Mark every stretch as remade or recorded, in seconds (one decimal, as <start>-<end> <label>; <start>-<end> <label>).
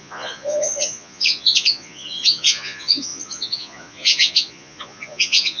0.0-5.6 remade